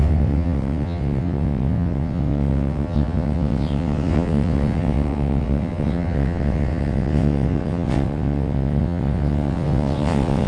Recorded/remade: remade